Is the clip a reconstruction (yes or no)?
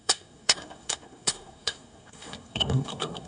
yes